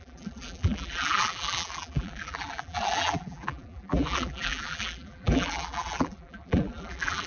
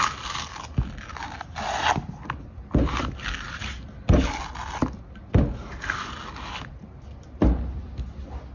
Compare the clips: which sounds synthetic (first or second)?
first